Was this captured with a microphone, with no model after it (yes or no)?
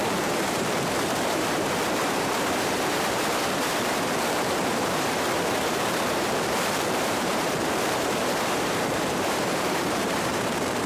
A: no